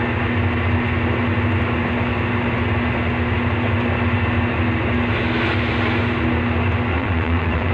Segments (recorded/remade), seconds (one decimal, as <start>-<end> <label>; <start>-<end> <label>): 0.0-6.9 recorded; 6.9-7.7 remade